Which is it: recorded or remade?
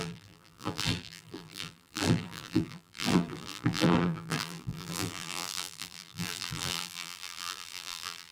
remade